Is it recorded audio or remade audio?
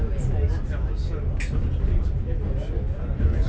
recorded